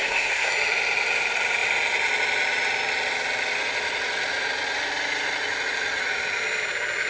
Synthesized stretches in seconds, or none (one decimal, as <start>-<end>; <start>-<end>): 0.0-0.5